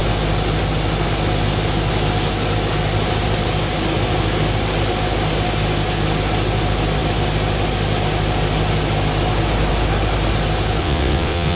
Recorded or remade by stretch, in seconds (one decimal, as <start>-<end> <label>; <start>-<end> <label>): 0.0-10.8 recorded; 10.8-11.6 remade